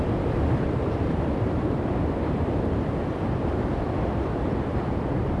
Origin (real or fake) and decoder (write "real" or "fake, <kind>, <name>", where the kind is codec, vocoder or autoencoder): fake, vocoder, BigVGAN v2